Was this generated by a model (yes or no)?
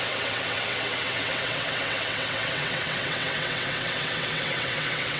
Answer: yes